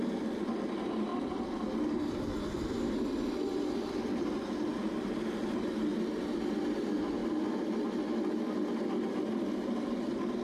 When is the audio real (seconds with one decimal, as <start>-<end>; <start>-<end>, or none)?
0.0-10.4